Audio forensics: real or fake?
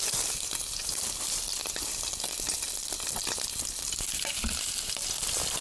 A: real